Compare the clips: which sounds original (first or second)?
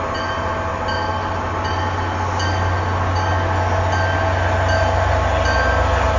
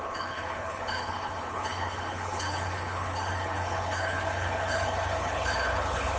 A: first